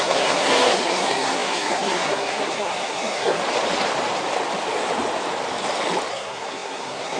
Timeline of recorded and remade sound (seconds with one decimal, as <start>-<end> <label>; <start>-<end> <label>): 0.0-3.4 remade; 3.4-6.1 recorded; 6.1-7.2 remade